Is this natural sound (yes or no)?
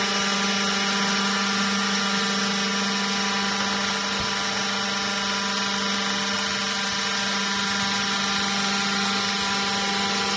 yes